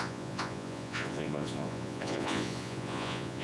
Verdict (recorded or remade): remade